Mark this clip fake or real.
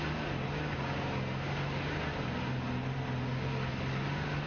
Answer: real